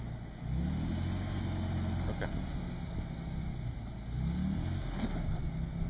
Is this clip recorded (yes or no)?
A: yes